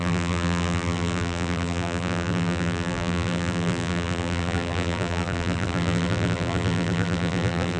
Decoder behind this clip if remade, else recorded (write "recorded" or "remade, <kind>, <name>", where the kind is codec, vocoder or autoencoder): remade, vocoder, BigVGAN v2